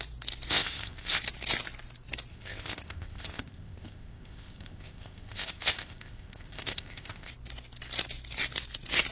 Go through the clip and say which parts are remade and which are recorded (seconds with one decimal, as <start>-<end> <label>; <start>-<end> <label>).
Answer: 0.0-0.5 recorded; 0.5-1.2 remade; 1.2-2.3 recorded; 2.3-7.3 remade; 7.3-9.1 recorded